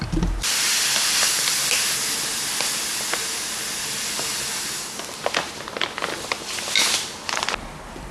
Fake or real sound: real